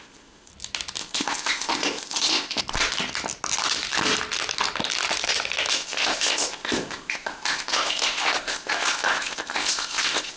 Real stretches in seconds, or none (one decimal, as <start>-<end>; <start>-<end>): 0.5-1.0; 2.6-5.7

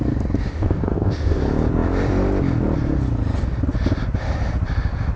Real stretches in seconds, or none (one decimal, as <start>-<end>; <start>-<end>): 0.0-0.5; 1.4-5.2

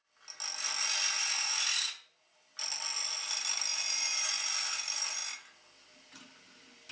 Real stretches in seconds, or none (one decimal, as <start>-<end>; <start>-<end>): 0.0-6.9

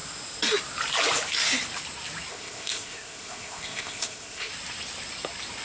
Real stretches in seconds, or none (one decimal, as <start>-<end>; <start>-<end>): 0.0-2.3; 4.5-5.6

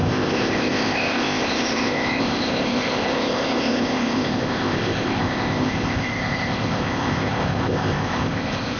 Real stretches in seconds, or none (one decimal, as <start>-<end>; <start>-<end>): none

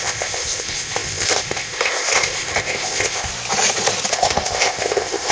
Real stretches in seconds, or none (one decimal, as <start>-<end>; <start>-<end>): 3.3-4.1